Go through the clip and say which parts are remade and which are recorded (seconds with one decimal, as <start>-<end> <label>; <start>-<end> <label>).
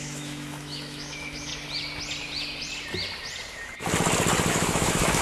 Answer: 0.0-1.5 remade; 1.5-4.5 recorded; 4.5-5.2 remade